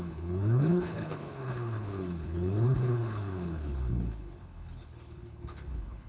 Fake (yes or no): yes